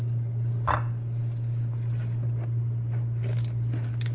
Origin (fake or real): real